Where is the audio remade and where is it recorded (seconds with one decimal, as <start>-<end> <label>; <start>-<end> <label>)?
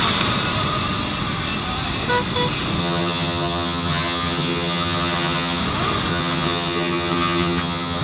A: 0.0-2.8 recorded; 2.8-5.6 remade; 5.6-6.1 recorded; 6.1-8.0 remade